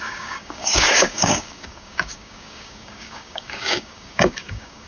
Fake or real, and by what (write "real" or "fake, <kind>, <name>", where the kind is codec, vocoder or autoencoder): fake, codec, DAC